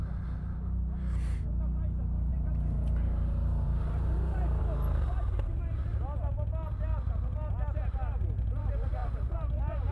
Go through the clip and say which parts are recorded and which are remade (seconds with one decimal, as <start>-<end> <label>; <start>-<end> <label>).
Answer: 0.0-2.3 recorded; 2.3-4.6 remade; 4.6-9.0 recorded; 9.0-9.9 remade